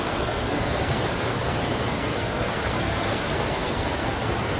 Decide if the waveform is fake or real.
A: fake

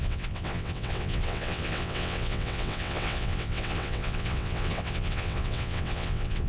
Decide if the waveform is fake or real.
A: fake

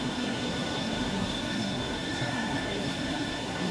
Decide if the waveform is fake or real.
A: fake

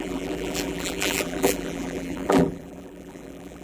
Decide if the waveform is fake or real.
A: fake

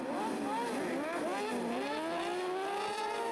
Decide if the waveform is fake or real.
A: real